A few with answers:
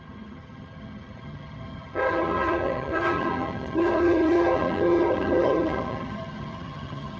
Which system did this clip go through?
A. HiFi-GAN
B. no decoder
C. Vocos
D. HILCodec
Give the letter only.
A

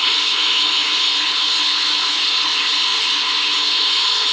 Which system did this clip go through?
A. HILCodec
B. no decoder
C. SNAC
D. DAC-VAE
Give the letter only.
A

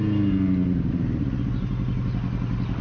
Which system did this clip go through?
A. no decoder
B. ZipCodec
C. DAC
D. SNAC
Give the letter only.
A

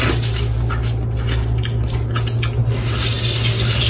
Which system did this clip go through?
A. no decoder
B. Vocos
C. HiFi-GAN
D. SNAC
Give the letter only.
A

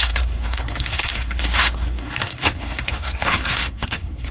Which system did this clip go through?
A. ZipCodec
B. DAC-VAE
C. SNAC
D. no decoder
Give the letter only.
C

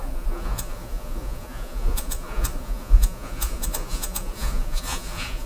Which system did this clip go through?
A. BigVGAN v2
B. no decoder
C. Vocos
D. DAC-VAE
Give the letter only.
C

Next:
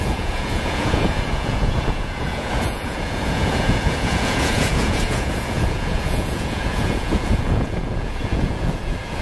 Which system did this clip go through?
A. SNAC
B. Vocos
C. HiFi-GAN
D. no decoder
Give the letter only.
B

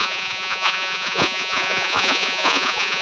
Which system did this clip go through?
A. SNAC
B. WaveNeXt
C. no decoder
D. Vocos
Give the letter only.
D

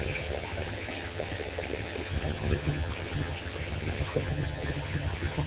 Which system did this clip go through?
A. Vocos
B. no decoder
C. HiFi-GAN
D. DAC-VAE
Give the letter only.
C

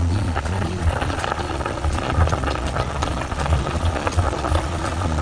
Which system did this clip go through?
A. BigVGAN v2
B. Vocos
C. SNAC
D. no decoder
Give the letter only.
B